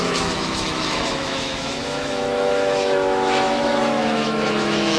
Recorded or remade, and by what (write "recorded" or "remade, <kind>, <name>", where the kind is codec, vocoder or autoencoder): remade, autoencoder, DAC-VAE